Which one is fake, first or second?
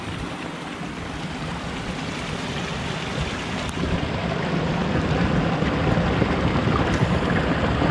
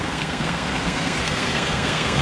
second